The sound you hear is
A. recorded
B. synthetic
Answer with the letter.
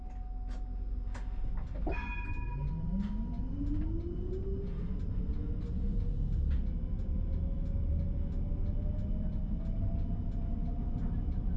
A